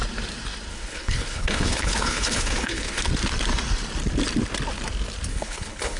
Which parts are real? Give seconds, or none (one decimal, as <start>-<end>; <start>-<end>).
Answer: 0.0-0.7; 3.0-5.3